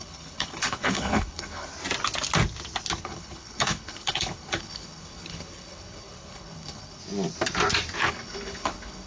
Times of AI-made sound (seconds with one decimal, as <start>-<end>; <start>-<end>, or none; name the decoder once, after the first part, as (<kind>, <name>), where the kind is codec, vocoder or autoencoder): 0.0-1.7 (codec, HILCodec); 3.0-7.0; 8.1-9.1